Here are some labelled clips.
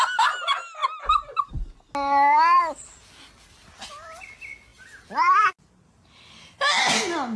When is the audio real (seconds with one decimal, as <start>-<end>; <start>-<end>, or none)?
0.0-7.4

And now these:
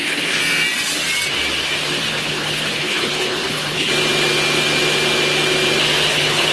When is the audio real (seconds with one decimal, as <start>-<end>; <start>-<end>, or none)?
0.4-2.1; 3.9-6.1

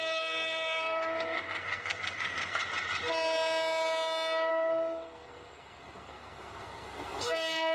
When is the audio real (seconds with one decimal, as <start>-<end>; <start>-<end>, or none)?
2.6-4.5